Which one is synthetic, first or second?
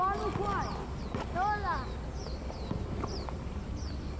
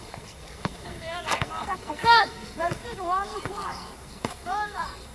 second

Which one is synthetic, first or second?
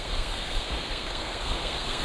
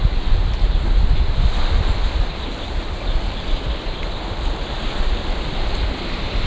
first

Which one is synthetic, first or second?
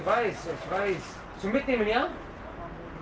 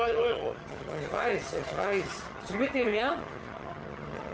second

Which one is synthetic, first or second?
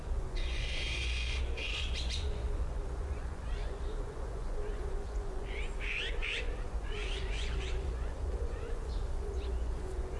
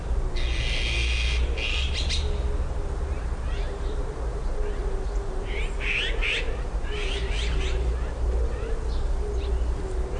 first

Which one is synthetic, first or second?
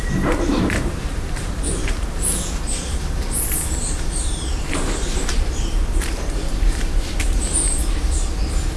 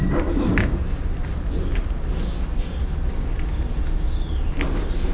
first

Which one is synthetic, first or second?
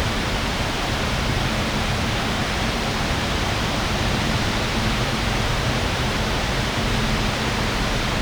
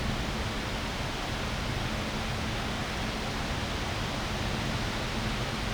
first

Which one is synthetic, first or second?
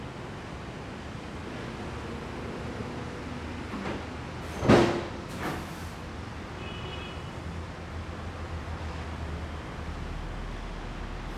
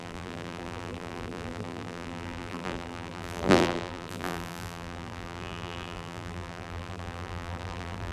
second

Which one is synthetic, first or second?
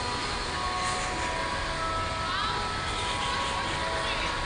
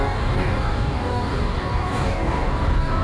second